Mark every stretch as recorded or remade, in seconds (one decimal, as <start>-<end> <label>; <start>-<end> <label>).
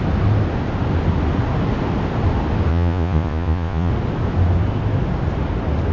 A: 0.0-2.7 recorded; 2.7-3.9 remade; 3.9-5.9 recorded